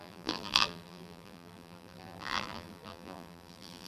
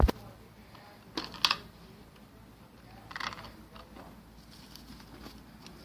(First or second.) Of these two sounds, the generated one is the first